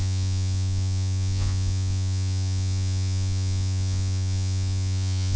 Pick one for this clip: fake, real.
fake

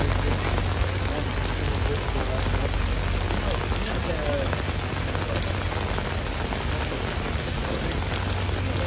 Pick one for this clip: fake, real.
real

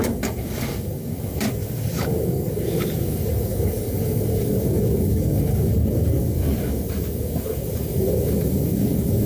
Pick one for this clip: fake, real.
fake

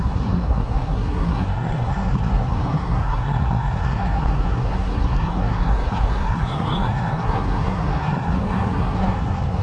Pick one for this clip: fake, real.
fake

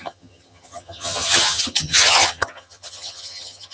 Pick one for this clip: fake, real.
fake